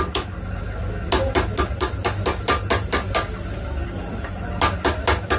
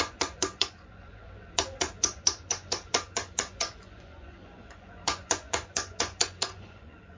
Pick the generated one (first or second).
second